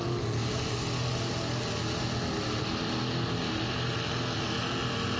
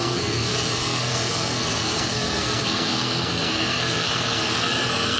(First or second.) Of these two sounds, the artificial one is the second